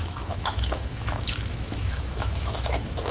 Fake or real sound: fake